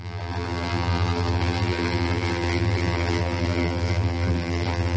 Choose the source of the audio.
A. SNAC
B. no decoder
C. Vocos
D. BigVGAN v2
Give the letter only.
D